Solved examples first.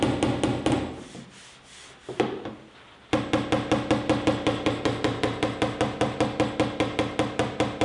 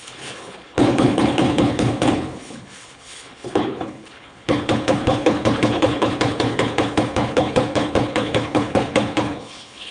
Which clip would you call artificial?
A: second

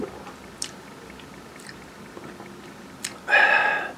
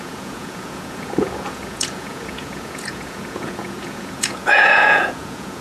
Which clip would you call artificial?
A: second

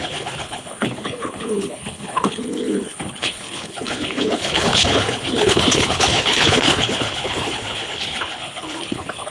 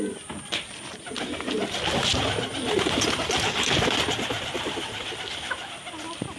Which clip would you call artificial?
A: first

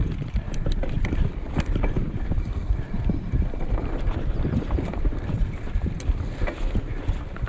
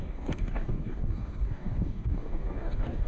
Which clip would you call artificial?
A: second